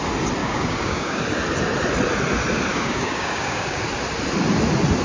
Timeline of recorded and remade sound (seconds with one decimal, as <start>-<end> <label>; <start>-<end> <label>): 0.0-0.4 recorded; 0.4-1.2 remade; 1.2-2.7 recorded; 2.7-3.8 remade; 3.8-5.0 recorded